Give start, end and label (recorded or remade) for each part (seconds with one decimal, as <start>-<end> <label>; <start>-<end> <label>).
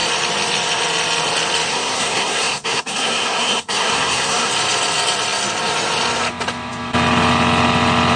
0.0-1.7 recorded; 1.7-4.5 remade; 4.5-8.2 recorded